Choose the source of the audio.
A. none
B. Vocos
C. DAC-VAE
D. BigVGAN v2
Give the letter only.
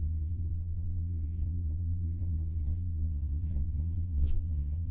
B